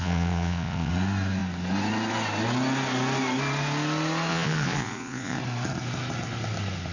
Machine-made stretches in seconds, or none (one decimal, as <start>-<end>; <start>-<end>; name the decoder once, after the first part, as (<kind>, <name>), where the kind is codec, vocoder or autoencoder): 0.0-0.9 (vocoder, Vocos); 4.3-5.4